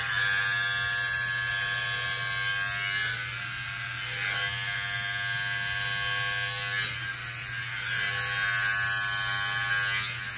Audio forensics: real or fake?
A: real